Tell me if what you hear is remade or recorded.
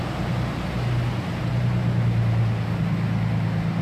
recorded